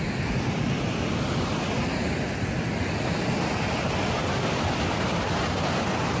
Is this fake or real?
real